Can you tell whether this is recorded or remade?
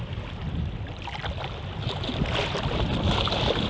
recorded